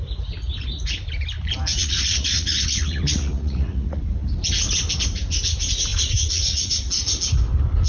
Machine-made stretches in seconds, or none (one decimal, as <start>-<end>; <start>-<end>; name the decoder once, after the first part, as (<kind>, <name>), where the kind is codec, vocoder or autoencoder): 1.7-4.0 (vocoder, Vocos); 5.9-6.8